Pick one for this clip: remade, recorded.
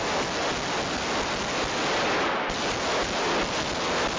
recorded